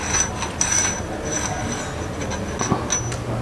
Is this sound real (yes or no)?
yes